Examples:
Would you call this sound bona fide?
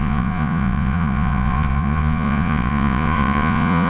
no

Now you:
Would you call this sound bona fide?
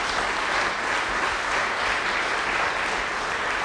yes